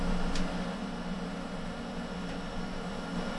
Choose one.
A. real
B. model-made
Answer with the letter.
A